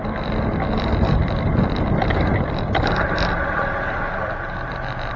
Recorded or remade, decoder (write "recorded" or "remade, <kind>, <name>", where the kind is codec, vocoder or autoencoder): recorded